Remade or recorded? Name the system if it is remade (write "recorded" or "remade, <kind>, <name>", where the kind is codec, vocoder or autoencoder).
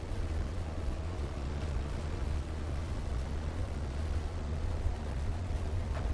remade, vocoder, Vocos